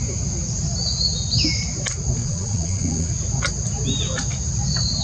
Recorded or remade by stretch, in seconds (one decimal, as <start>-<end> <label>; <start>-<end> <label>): 0.0-2.2 recorded; 2.2-3.1 remade; 3.1-5.0 recorded